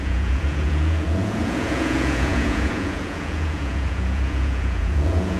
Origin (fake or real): fake